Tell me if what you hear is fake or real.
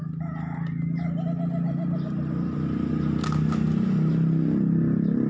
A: real